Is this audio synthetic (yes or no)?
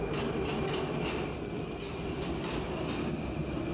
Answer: no